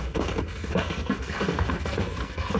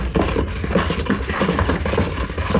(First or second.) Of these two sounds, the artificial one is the first